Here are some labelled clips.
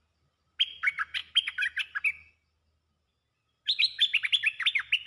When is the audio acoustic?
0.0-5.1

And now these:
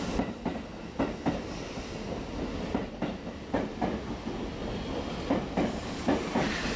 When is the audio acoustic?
0.5-1.8; 2.8-3.3; 3.7-5.7